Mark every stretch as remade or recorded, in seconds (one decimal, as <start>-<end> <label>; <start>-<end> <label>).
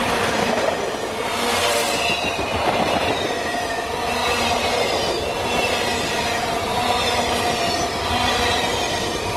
0.0-9.4 recorded